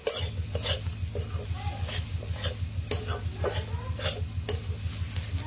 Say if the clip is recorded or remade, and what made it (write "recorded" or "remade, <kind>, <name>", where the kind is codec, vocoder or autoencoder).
recorded